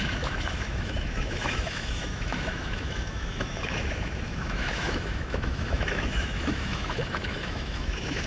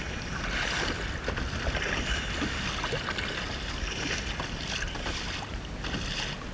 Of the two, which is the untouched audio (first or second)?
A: second